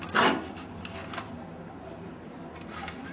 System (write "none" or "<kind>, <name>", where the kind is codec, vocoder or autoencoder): none